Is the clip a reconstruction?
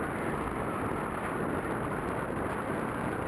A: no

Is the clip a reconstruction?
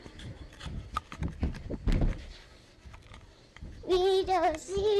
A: no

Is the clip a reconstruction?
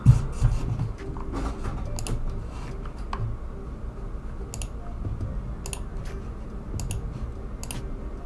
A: no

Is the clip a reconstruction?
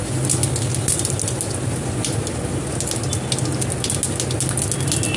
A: no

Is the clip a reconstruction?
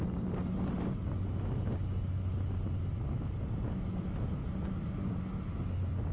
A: no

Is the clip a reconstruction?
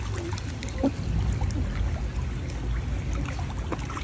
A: no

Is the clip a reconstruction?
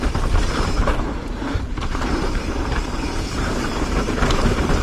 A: yes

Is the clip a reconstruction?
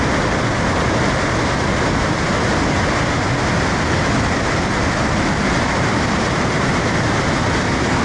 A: no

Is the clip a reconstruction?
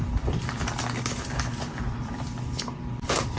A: yes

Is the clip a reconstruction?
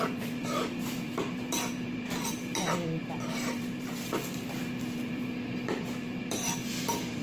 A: yes